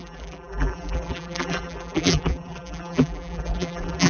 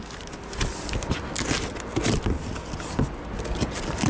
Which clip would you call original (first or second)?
second